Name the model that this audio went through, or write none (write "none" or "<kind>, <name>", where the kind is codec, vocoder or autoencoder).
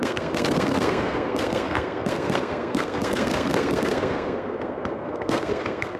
codec, SNAC